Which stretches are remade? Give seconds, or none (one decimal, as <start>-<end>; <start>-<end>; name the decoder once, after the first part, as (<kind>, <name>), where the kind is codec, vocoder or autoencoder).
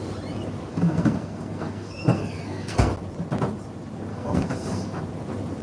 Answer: 0.7-2.9 (codec, SNAC); 4.1-5.0